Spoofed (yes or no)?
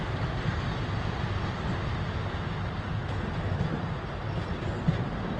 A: no